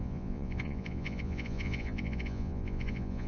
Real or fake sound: fake